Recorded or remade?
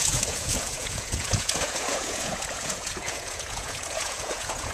remade